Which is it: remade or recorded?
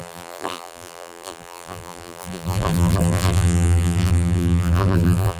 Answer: remade